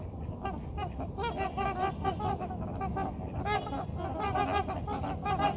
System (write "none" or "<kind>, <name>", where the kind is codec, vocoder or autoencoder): none